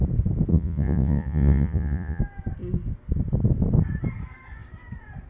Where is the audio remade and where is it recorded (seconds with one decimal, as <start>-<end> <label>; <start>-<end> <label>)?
0.0-0.5 recorded; 0.5-2.2 remade; 2.2-5.3 recorded